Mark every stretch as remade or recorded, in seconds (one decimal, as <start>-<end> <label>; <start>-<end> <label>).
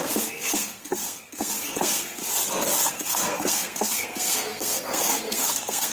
0.0-2.2 remade; 2.2-2.9 recorded; 2.9-5.9 remade